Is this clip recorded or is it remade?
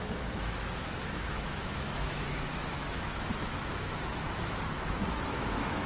remade